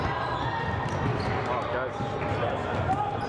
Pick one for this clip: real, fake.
real